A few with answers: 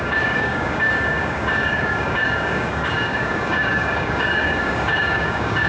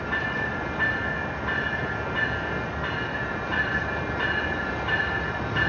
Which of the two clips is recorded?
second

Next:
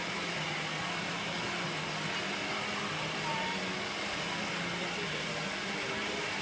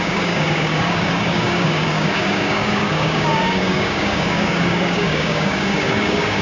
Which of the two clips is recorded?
first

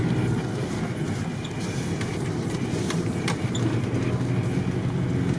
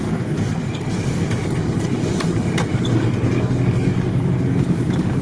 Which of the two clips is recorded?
first